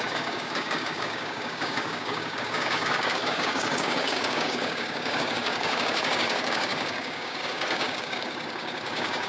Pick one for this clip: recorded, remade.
remade